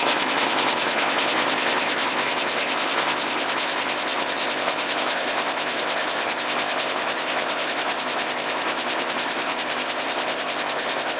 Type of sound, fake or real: fake